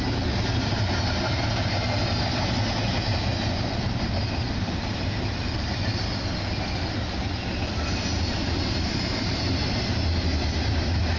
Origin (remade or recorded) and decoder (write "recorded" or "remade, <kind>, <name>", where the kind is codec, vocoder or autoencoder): recorded